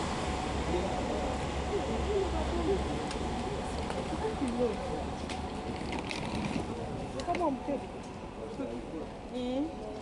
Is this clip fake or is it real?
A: real